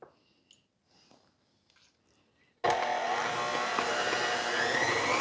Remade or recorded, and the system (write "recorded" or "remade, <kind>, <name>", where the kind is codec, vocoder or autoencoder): recorded